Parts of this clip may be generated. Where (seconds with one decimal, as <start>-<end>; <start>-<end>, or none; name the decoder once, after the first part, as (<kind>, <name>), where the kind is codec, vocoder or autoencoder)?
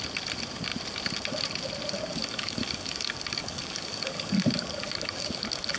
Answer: 2.1-5.8 (codec, DAC)